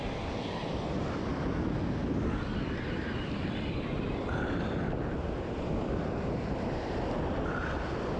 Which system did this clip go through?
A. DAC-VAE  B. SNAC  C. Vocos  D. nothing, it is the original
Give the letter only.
D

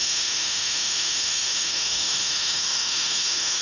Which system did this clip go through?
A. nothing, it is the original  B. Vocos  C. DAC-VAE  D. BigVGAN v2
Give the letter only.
C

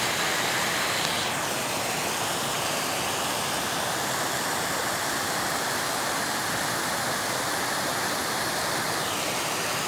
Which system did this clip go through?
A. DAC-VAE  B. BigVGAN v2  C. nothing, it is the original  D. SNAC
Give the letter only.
C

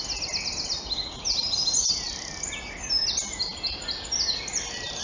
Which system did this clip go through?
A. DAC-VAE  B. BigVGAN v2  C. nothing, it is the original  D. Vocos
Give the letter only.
C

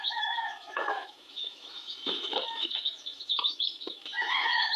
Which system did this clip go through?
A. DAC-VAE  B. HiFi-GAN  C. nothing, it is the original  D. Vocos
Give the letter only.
A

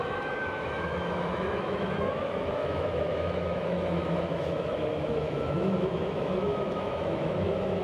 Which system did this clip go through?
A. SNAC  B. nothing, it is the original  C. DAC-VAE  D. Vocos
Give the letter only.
C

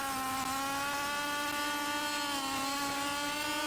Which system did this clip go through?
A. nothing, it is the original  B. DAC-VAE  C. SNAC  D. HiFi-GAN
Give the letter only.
A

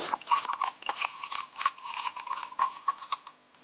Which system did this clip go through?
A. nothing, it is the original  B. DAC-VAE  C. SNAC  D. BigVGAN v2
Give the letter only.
A